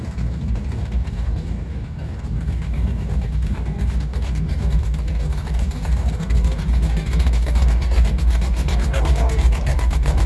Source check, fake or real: fake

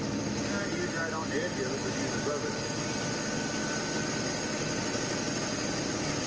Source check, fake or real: real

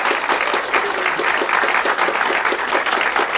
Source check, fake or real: real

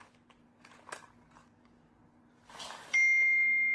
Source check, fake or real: fake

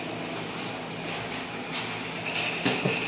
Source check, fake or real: real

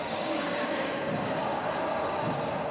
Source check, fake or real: fake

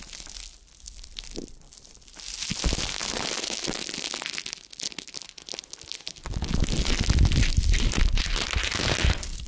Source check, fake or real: real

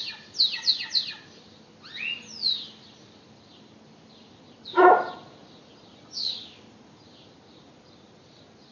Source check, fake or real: real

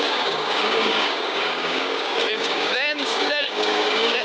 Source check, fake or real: fake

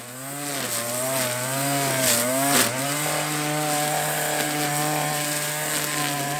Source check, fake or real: real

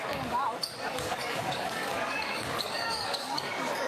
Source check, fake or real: fake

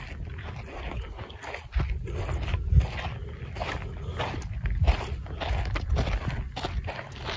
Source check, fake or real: real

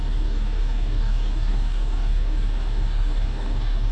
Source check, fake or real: fake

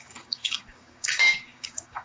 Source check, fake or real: fake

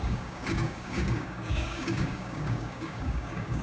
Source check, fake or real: fake